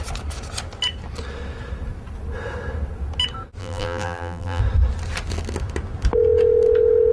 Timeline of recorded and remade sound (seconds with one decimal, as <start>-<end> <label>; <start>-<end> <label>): 0.0-3.6 recorded; 3.6-4.6 remade; 4.6-7.1 recorded